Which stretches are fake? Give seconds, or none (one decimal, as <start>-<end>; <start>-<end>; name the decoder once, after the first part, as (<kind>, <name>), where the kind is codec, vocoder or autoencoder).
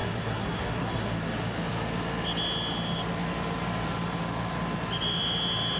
0.0-1.1 (codec, SNAC)